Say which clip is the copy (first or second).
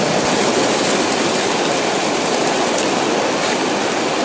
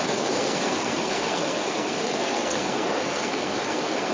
second